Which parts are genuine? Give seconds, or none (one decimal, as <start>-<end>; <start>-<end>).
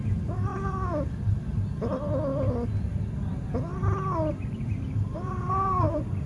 0.5-4.3